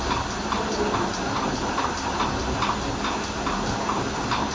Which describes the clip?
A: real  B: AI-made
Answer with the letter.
A